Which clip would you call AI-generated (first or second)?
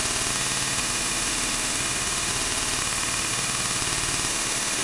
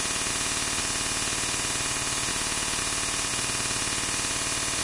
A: first